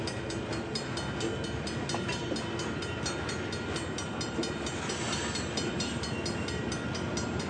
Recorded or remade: recorded